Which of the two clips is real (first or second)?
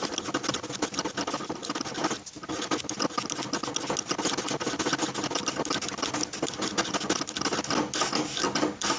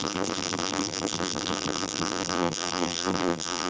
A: first